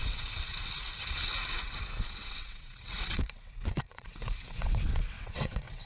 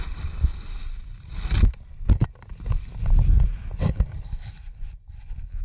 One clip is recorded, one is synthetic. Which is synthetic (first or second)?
first